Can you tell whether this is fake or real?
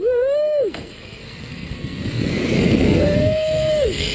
fake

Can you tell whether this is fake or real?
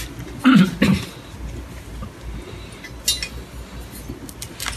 real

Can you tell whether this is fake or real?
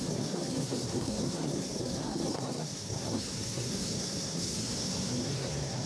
fake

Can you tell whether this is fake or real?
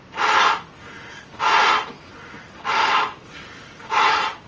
real